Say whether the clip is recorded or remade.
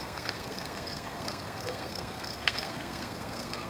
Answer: remade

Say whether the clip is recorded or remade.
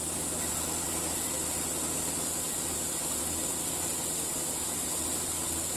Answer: recorded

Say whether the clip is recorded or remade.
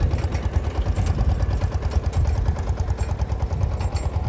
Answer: recorded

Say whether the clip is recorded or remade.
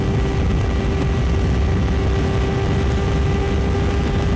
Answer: recorded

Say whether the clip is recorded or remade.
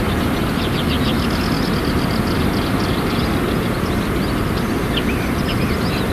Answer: recorded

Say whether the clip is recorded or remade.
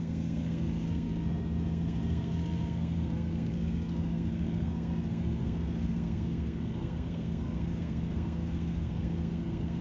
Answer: remade